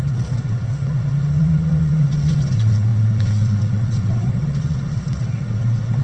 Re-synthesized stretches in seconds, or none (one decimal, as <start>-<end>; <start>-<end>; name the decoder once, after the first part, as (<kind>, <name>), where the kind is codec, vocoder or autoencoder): 0.0-6.0 (vocoder, WaveNeXt)